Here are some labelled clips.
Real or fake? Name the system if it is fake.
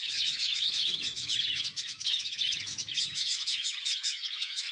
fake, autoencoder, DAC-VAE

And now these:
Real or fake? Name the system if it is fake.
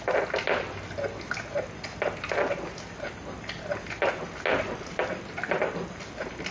real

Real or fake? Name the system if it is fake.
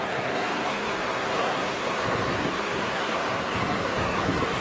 fake, codec, SNAC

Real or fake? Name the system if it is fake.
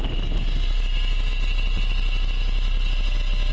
real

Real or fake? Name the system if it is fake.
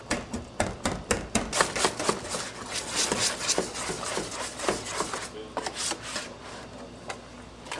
real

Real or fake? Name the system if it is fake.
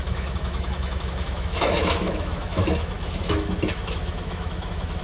fake, autoencoder, DAC-VAE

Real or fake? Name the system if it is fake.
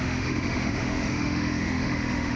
fake, autoencoder, DAC-VAE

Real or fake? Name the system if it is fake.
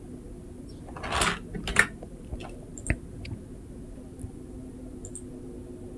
real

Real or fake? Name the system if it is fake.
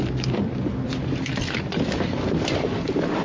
real